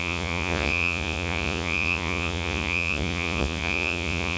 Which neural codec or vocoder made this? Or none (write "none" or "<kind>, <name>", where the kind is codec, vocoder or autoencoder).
vocoder, Vocos